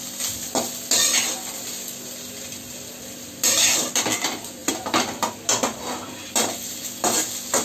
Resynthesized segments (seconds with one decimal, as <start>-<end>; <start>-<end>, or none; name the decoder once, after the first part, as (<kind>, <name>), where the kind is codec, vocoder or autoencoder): none